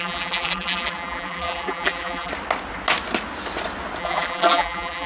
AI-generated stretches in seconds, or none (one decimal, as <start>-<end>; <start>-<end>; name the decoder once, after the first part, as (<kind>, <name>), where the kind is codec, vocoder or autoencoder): 0.0-2.3 (vocoder, BigVGAN v2); 4.0-5.1